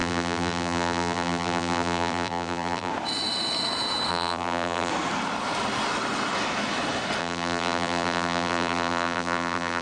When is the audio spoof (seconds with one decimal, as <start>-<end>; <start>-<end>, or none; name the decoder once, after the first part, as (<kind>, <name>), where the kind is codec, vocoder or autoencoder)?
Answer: 0.0-2.9 (vocoder, BigVGAN v2); 4.1-4.9; 7.2-9.8